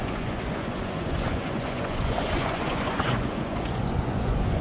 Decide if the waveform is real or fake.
fake